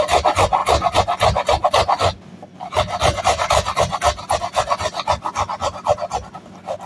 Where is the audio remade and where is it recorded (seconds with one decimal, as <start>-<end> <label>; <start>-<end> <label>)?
0.0-6.9 recorded